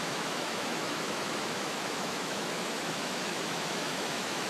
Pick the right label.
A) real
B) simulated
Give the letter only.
B